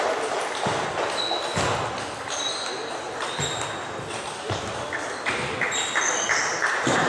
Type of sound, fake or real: real